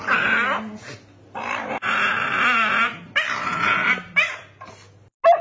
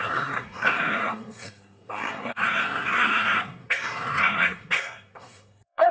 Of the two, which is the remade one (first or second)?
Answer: second